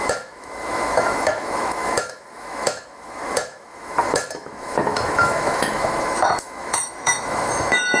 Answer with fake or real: fake